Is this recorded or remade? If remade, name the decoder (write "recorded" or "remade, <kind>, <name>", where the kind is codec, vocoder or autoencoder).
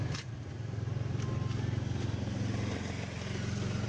recorded